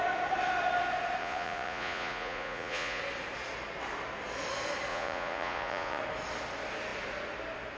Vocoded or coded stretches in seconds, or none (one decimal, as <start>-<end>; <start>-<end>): 1.2-3.0; 4.9-6.0